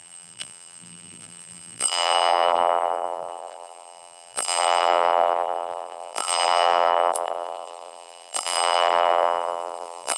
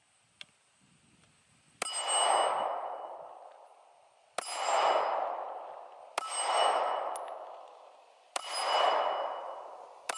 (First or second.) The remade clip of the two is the first